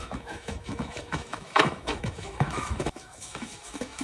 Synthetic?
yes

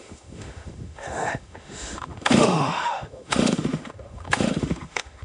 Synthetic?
yes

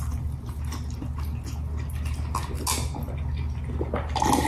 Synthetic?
no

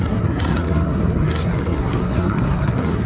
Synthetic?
yes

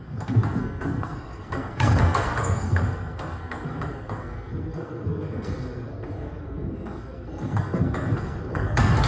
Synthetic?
yes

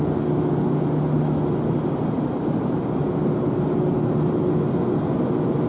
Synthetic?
no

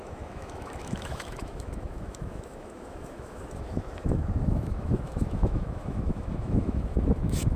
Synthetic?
yes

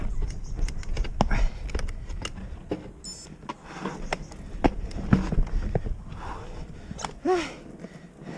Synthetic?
no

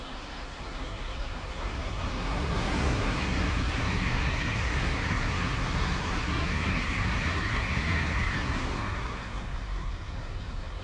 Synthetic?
yes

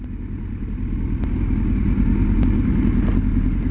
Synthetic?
no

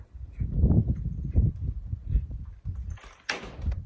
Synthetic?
yes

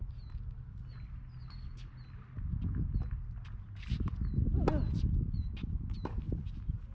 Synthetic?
no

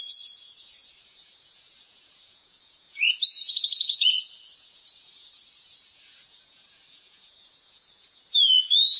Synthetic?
yes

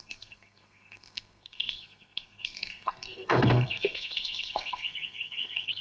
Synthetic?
yes